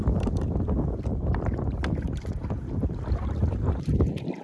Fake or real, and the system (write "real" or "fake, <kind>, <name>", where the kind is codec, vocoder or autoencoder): real